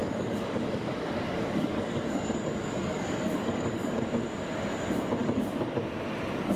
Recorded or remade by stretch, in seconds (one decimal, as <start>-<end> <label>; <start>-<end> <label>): 0.0-4.0 remade; 4.0-5.2 recorded; 5.2-5.8 remade; 5.8-6.6 recorded